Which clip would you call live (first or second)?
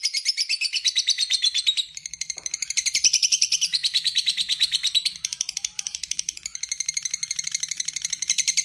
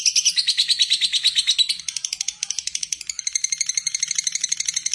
second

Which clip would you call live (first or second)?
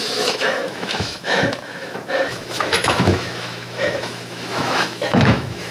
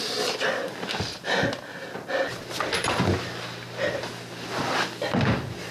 second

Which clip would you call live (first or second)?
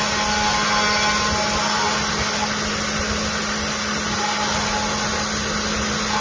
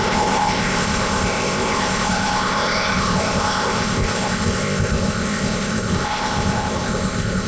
first